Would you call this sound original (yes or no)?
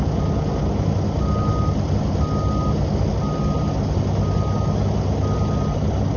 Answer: yes